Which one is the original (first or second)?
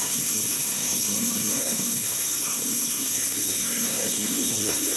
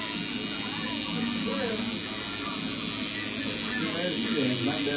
second